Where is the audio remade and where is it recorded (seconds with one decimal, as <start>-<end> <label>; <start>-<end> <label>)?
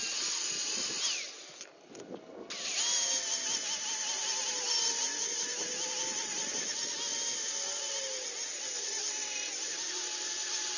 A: 0.0-10.8 recorded